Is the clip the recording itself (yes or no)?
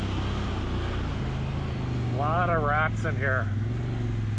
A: yes